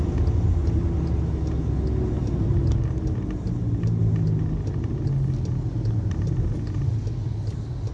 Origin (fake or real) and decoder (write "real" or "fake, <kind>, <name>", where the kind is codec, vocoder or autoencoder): real